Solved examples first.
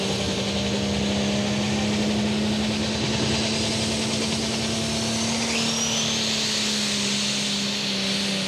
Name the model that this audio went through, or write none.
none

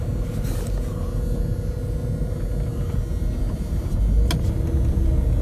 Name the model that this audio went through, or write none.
none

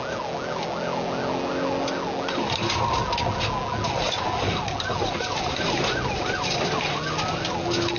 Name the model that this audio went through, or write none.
none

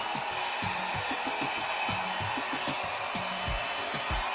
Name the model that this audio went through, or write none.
none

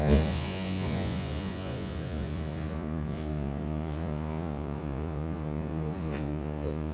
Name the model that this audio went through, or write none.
vocoder, Vocos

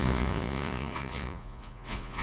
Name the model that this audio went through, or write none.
vocoder, Vocos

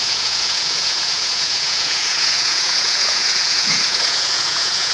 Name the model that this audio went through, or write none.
vocoder, Vocos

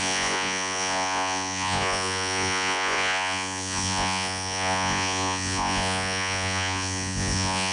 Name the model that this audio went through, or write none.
vocoder, Vocos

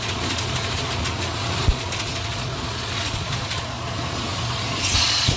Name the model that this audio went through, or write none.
vocoder, Vocos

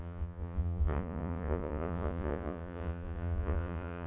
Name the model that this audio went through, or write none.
vocoder, Vocos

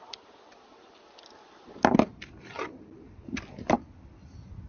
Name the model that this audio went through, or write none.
none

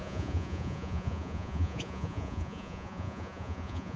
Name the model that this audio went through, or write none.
vocoder, Vocos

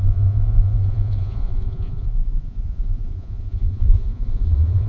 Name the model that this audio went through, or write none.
vocoder, Vocos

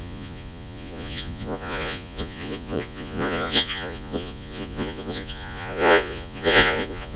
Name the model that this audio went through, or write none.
vocoder, Vocos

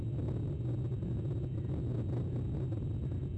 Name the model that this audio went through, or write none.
none